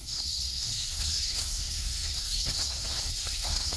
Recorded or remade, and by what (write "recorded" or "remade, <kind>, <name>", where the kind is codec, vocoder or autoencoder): remade, codec, SNAC